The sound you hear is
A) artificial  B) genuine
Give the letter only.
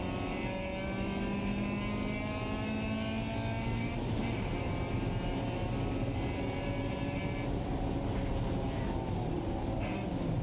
B